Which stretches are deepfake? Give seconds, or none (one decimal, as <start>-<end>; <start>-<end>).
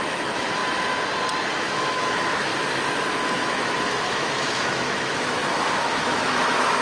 0.0-0.6; 1.6-2.5; 3.3-5.4; 6.0-6.8